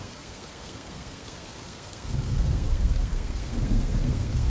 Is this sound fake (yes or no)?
yes